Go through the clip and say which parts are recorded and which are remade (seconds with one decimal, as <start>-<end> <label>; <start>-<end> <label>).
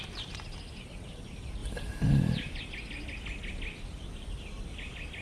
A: 0.0-5.2 recorded